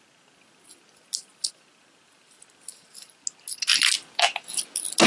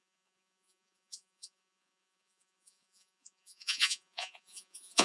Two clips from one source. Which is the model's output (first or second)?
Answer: second